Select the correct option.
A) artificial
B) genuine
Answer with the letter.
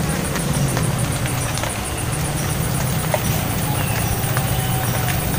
B